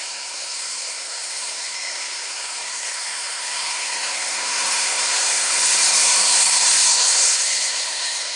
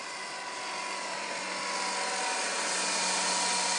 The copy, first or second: first